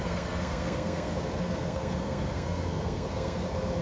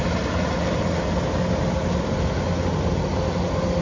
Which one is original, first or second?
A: second